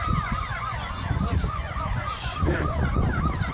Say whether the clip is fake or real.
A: fake